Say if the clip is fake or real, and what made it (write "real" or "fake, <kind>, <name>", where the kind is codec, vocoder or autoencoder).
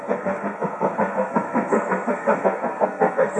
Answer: fake, codec, SNAC